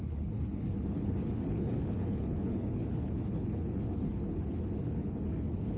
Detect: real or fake fake